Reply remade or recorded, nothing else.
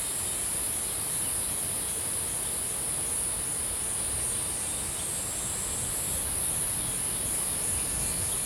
recorded